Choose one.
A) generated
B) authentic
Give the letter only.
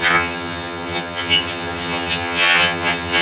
A